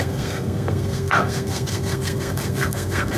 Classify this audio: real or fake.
fake